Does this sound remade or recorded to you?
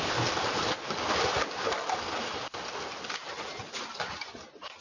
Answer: recorded